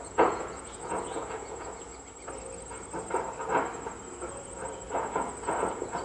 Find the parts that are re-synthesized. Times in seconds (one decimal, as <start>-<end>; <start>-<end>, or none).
0.0-1.9; 4.1-6.0